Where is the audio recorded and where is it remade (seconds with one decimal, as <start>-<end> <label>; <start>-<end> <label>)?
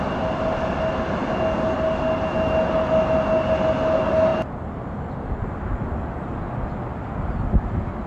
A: 0.0-8.1 recorded